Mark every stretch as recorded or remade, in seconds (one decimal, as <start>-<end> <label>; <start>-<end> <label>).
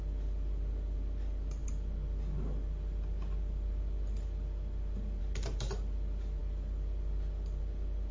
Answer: 0.0-8.1 recorded